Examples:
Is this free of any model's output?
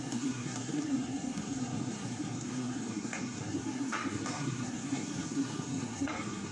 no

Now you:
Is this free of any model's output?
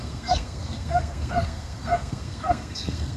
no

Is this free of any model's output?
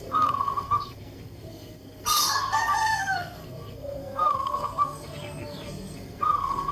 no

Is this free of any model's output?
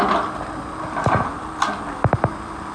yes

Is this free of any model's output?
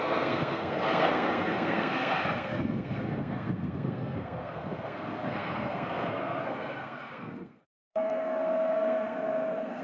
no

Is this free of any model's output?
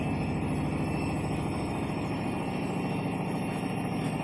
yes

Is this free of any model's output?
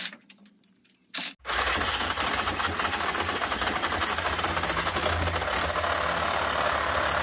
yes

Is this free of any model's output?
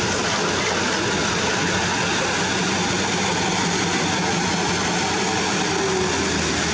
yes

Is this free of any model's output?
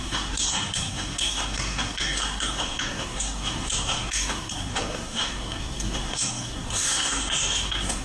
no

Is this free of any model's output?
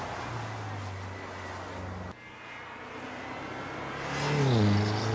yes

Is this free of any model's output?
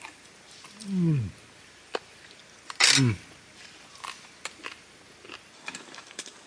yes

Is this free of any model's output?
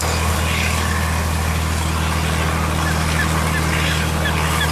yes